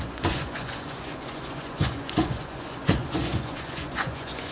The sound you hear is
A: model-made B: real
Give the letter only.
A